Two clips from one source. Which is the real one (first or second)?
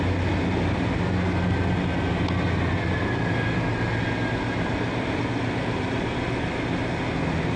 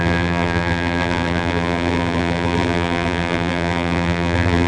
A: first